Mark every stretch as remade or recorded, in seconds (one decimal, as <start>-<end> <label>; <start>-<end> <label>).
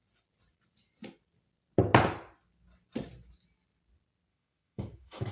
0.0-4.3 recorded; 4.3-5.3 remade